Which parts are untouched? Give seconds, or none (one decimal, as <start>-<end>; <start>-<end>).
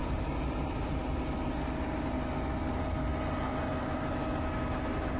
0.0-5.2